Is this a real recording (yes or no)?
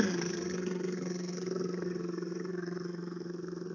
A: no